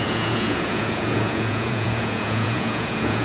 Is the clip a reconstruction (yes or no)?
yes